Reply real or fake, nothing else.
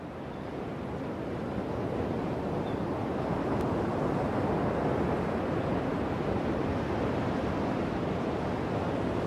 real